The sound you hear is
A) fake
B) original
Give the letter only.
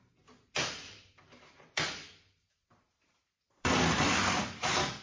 A